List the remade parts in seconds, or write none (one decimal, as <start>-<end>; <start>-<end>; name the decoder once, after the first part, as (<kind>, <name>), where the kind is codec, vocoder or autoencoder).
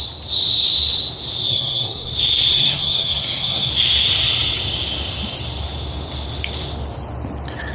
1.5-2.1 (codec, SNAC); 2.5-3.7